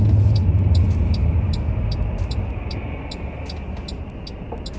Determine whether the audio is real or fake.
real